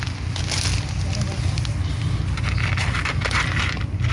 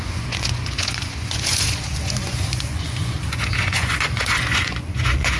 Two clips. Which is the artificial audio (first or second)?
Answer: second